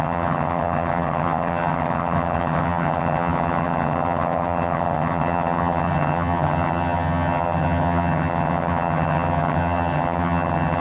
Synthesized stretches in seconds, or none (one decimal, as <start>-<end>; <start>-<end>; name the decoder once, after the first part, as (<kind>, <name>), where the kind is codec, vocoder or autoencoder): 0.0-10.8 (vocoder, HiFi-GAN)